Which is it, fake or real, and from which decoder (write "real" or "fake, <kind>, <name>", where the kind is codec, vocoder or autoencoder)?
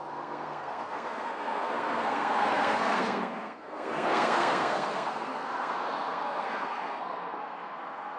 fake, codec, SNAC